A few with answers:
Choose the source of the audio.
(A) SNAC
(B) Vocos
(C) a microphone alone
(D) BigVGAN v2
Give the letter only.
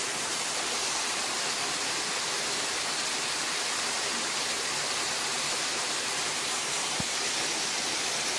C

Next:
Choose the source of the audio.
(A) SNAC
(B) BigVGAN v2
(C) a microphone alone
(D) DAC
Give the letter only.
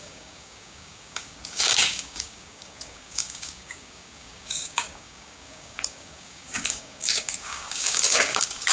D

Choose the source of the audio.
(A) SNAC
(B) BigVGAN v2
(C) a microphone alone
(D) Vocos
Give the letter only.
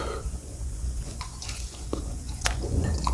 D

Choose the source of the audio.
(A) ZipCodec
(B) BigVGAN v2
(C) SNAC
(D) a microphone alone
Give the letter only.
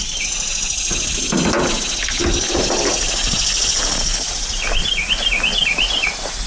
D